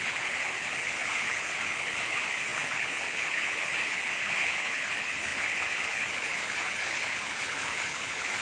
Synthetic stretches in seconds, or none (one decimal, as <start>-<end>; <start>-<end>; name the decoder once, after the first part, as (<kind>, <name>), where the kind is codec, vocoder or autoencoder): 0.0-8.4 (codec, HILCodec)